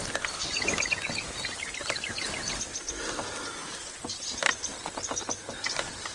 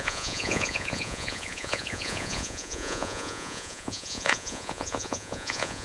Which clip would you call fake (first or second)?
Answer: second